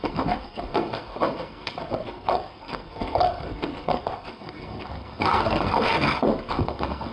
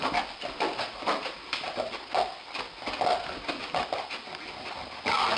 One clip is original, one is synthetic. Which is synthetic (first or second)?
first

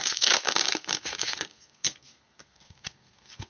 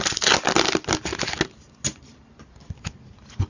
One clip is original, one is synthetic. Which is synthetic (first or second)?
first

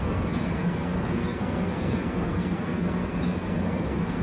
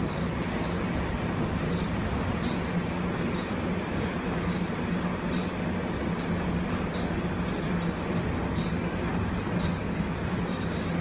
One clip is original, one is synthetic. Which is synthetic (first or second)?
first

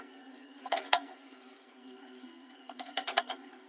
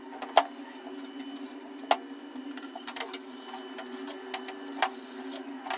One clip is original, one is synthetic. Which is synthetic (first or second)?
first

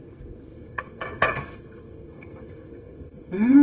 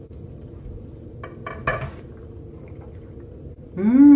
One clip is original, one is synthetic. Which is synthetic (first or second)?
first